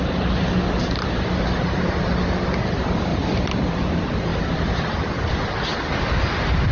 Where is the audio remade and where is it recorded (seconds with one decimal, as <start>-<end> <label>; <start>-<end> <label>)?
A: 0.0-3.1 recorded; 3.1-3.8 remade; 3.8-4.3 recorded; 4.3-5.3 remade; 5.3-6.7 recorded